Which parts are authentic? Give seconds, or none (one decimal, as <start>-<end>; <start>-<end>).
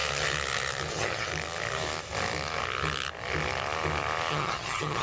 0.0-0.9; 1.3-4.3